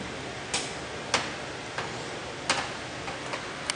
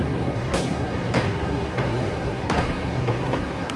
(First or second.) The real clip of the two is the first